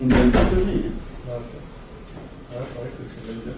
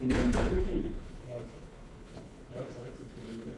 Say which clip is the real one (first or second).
first